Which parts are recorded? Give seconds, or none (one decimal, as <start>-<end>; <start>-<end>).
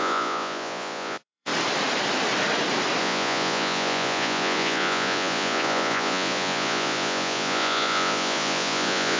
1.5-3.0